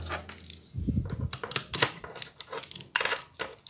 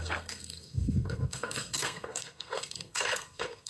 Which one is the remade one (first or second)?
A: second